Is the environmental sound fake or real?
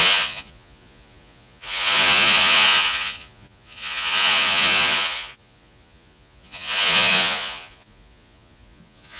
fake